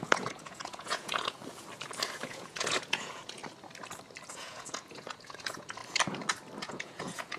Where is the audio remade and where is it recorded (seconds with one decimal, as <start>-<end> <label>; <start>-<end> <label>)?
0.0-1.4 remade; 1.4-2.3 recorded; 2.3-3.4 remade; 3.4-4.3 recorded; 4.3-5.8 remade; 5.8-6.6 recorded; 6.6-7.4 remade